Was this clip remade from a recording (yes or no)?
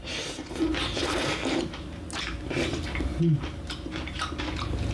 yes